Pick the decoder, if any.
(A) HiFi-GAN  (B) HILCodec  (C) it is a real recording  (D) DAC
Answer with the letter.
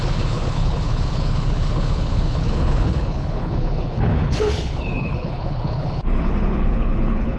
B